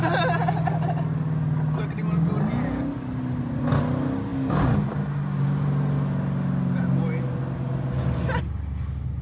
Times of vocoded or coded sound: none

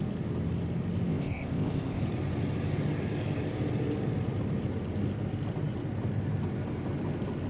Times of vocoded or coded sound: 1.1-2.0

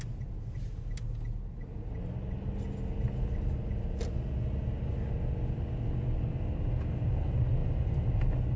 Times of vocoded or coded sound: none